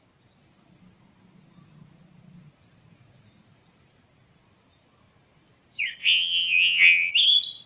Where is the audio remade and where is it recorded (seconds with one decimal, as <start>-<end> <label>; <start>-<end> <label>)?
0.0-6.0 recorded; 6.0-7.1 remade; 7.1-7.7 recorded